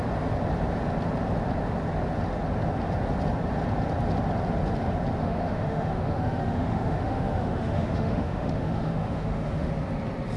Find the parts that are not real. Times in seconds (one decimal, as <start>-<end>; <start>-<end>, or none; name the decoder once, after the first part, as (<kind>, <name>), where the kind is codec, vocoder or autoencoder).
5.2-9.7 (autoencoder, DAC-VAE)